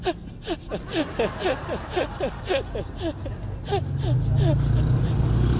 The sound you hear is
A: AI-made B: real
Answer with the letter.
B